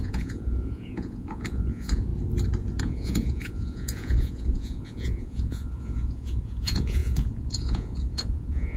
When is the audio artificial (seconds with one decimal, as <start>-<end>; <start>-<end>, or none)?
0.0-2.1; 2.8-8.8